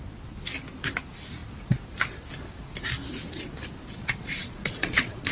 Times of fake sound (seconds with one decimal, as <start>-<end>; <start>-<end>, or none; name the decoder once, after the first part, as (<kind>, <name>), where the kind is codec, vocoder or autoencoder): 4.0-5.3 (vocoder, Vocos)